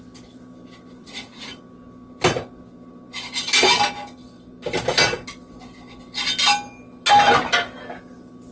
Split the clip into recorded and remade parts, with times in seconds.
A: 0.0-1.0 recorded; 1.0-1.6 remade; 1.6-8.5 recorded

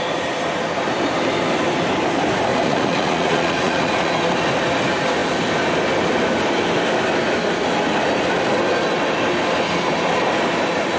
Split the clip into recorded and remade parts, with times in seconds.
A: 0.0-2.5 recorded; 2.5-4.1 remade; 4.1-11.0 recorded

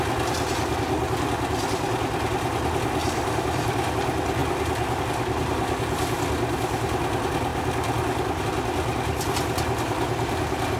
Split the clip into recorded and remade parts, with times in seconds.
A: 0.0-3.0 recorded; 3.0-3.9 remade; 3.9-10.8 recorded